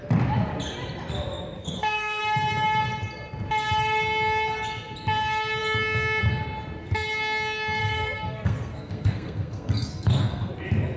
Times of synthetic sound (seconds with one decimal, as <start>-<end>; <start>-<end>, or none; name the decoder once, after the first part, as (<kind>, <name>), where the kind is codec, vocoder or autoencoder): 1.6-2.2 (codec, SNAC); 7.8-10.5